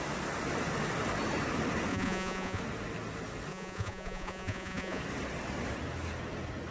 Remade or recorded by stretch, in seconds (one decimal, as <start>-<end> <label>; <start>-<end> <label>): 0.0-1.9 recorded; 1.9-2.6 remade; 2.6-3.5 recorded; 3.5-5.0 remade; 5.0-6.7 recorded